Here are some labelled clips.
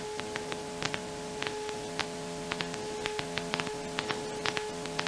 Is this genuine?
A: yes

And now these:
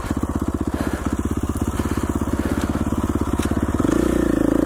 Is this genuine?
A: yes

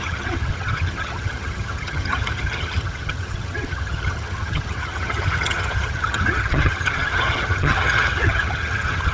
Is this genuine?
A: no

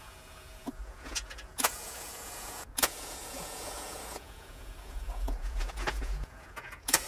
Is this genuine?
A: no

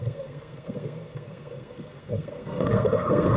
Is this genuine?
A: no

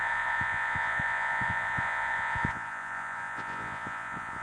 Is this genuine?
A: no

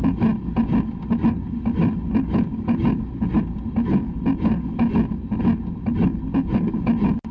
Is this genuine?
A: yes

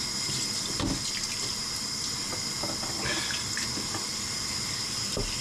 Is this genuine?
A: yes